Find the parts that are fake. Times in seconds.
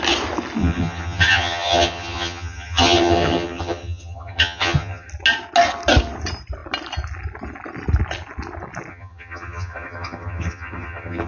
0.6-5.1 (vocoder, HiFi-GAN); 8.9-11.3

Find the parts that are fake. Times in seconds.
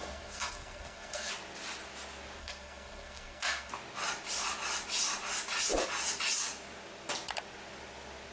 0.0-1.3 (codec, SNAC); 2.4-3.7